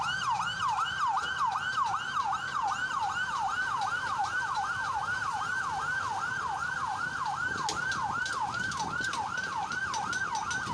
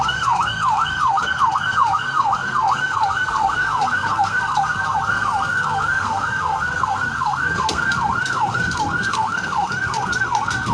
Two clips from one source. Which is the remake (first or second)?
second